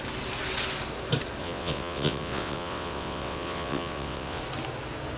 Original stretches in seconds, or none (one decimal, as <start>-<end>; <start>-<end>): 0.0-1.4; 4.4-5.2